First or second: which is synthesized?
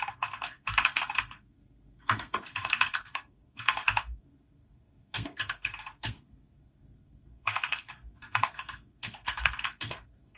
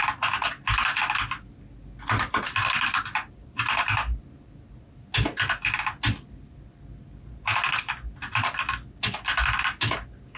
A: first